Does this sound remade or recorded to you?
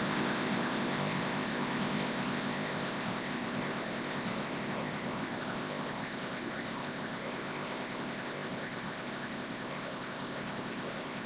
remade